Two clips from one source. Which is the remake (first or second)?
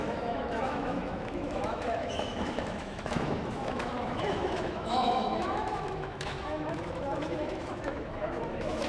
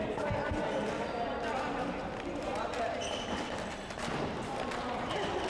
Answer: first